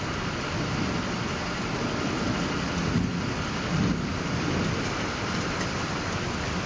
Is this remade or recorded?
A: recorded